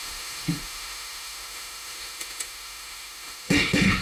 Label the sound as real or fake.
fake